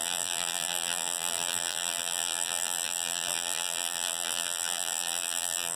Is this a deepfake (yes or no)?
yes